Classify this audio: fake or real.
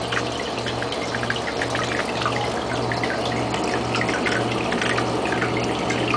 real